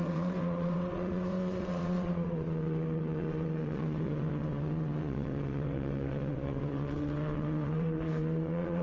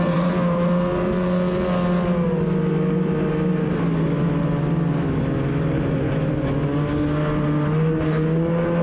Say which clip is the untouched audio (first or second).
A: second